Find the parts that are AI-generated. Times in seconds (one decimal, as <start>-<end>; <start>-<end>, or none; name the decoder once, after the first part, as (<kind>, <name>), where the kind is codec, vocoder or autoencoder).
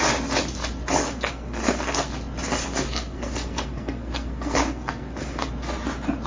1.0-2.1 (codec, SNAC); 2.6-5.5